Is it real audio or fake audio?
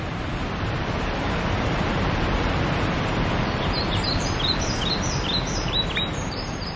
fake